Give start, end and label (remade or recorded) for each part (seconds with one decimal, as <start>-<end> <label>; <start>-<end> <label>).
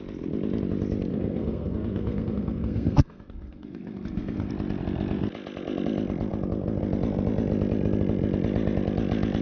0.0-1.1 recorded; 1.1-4.5 remade; 4.5-9.4 recorded